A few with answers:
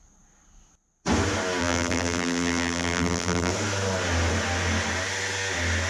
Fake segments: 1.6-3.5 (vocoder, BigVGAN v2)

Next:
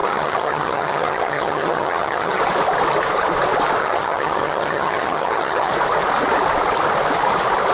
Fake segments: 0.0-2.4 (vocoder, HiFi-GAN); 3.8-5.7